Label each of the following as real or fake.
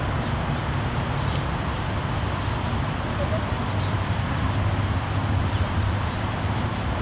real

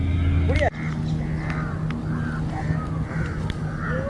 real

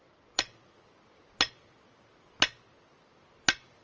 real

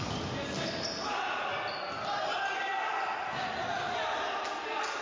real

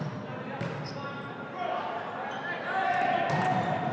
real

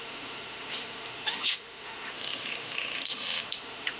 fake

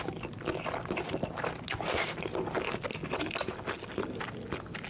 real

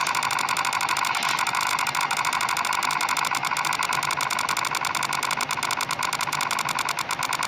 real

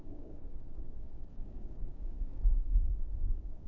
fake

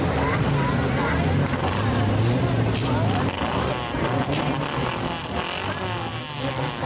real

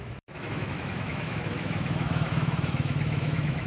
fake